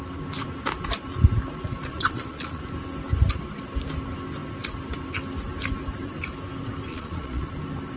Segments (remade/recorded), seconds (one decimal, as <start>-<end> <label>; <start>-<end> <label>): 0.0-1.9 recorded; 1.9-2.6 remade; 2.6-6.9 recorded; 6.9-7.5 remade; 7.5-8.0 recorded